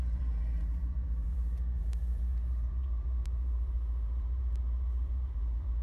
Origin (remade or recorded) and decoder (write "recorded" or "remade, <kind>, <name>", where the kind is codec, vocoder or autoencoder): remade, vocoder, BigVGAN v2